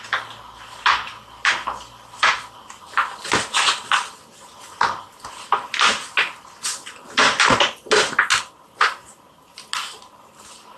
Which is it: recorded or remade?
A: recorded